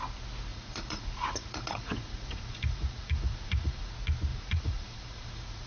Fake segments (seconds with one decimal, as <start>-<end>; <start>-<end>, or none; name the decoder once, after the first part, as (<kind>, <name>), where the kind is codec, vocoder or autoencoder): 0.5-3.9 (vocoder, Vocos); 4.3-5.7